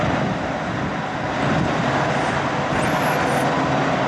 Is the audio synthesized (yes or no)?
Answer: no